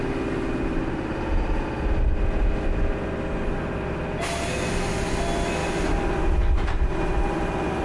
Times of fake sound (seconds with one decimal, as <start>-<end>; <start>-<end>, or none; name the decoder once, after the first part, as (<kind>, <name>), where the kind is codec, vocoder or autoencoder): none